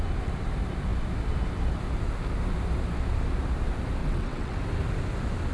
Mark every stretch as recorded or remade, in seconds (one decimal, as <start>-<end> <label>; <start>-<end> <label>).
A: 0.0-4.0 recorded; 4.0-4.6 remade; 4.6-5.5 recorded